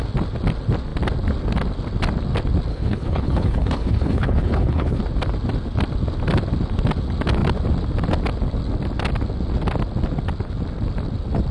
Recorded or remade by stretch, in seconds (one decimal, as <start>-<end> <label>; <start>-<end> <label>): 0.0-2.7 recorded; 2.7-5.0 remade; 5.0-11.5 recorded